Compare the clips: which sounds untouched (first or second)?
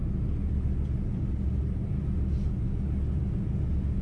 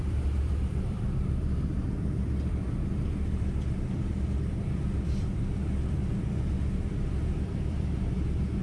first